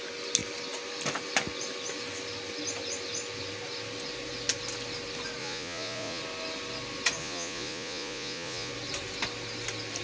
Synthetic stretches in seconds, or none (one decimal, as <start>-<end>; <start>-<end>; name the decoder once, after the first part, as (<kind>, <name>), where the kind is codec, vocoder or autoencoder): 5.4-6.2 (vocoder, Vocos); 7.2-8.7